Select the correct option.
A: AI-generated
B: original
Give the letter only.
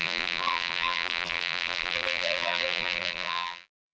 A